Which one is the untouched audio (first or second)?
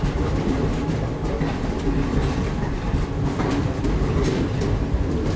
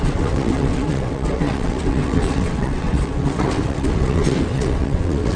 first